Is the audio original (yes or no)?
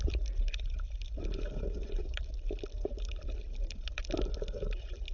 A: no